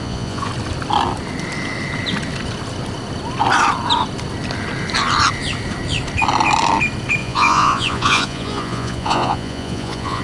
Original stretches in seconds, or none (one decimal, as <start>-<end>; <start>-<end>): 0.5-7.2